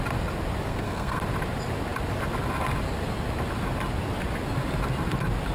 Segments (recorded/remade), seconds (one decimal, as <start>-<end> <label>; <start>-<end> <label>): 0.0-0.7 recorded; 0.7-1.2 remade; 1.2-5.5 recorded